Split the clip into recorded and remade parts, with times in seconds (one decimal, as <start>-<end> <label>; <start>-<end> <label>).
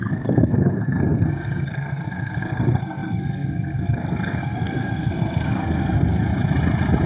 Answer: 0.0-6.3 remade; 6.3-7.1 recorded